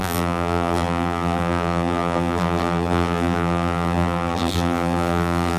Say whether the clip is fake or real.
fake